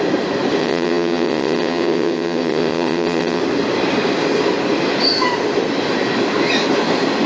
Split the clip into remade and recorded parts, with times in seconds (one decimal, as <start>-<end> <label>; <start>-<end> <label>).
0.0-0.6 recorded; 0.6-3.4 remade; 3.4-7.3 recorded